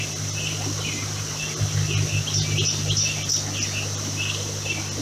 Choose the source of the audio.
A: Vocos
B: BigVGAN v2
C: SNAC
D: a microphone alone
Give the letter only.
D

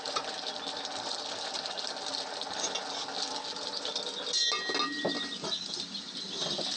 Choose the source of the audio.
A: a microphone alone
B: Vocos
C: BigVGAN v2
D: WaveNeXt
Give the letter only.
A